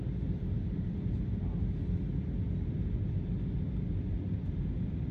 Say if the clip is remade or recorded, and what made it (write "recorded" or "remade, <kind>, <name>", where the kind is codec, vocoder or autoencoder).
recorded